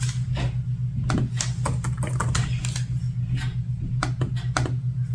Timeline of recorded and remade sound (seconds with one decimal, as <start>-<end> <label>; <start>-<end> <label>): 0.0-5.1 recorded